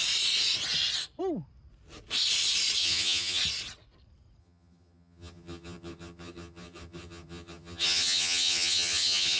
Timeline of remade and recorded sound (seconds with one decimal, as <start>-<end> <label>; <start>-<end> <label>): 0.0-2.8 recorded; 2.8-3.4 remade; 3.4-4.4 recorded; 4.4-9.4 remade